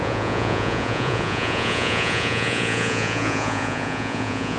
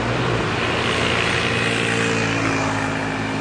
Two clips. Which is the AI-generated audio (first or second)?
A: first